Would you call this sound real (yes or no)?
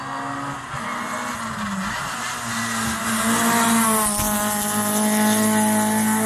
yes